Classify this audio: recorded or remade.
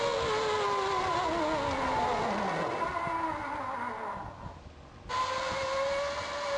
recorded